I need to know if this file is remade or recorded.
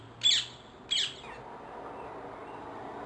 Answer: recorded